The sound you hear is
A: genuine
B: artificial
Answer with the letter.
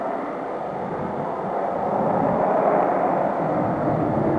A